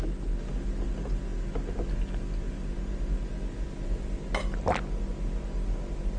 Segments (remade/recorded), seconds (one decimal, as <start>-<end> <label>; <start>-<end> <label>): 0.0-6.2 recorded